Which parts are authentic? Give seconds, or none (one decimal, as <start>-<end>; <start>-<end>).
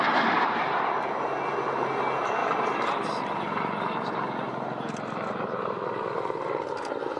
0.0-7.2